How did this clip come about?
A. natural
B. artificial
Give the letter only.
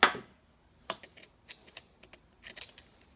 A